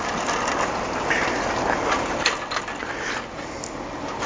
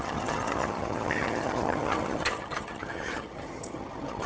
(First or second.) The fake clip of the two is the second